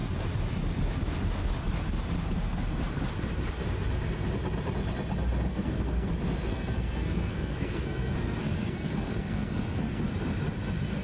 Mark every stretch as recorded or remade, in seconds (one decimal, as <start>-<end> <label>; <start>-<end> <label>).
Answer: 0.0-5.5 recorded; 5.5-6.1 remade; 6.1-6.5 recorded; 6.5-10.0 remade; 10.0-11.0 recorded